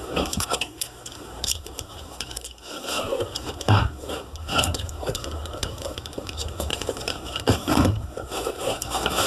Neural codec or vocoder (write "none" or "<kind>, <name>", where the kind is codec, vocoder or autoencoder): codec, SNAC